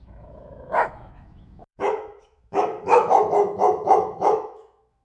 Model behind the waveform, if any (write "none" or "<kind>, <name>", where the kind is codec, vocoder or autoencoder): autoencoder, DAC-VAE